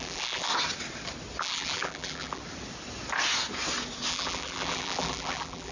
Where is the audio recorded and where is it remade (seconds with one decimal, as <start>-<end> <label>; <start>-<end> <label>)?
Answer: 0.0-0.5 remade; 0.5-1.4 recorded; 1.4-2.4 remade; 2.4-4.1 recorded; 4.1-5.7 remade